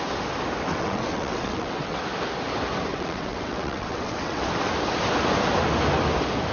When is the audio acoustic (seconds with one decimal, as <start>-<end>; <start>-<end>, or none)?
0.0-0.7; 2.0-2.9; 4.5-6.5